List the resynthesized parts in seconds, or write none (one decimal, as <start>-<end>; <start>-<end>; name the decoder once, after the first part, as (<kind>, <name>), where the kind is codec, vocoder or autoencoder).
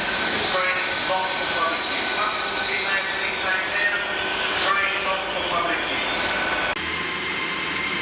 0.0-1.1 (codec, DAC); 4.3-5.3